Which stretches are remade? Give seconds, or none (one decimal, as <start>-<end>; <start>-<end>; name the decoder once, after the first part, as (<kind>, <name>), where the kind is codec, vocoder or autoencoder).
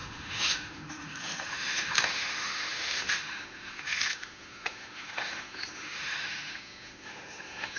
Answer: 0.0-7.8 (autoencoder, DAC-VAE)